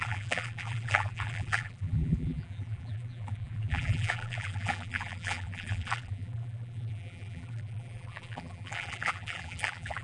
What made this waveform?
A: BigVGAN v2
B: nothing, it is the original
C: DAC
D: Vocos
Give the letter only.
A